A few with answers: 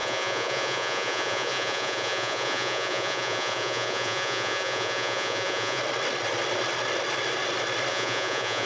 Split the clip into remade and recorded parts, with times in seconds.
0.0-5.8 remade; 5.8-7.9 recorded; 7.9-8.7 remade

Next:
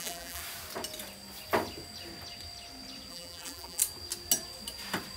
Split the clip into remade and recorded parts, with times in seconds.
0.0-0.4 remade; 0.4-3.1 recorded; 3.1-3.8 remade; 3.8-5.2 recorded

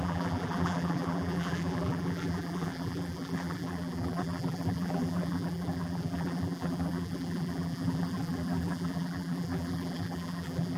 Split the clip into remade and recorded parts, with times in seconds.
0.0-10.8 remade